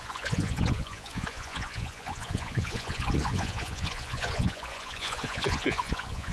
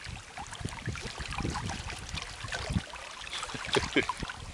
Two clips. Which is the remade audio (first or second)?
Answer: first